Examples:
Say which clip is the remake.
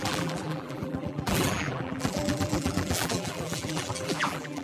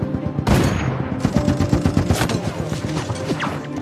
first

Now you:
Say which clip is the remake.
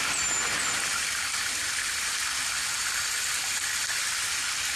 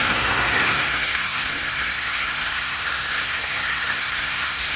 second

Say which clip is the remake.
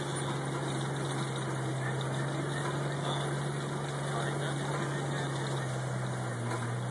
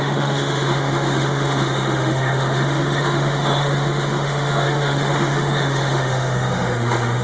second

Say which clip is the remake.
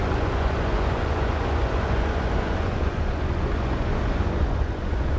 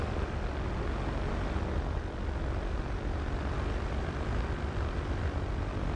first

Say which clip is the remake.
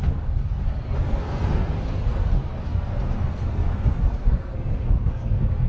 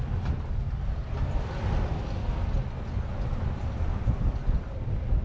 first